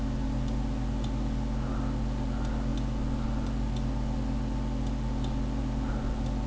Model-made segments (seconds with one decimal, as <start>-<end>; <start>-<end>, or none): none